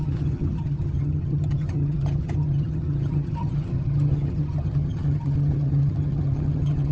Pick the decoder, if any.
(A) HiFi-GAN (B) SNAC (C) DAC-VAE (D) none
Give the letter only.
A